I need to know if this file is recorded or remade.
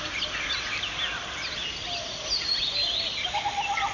recorded